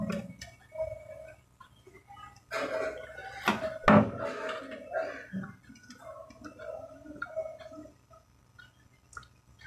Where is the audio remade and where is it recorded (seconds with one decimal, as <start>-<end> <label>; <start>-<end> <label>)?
0.0-9.7 recorded